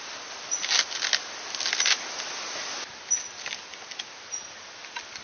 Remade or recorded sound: recorded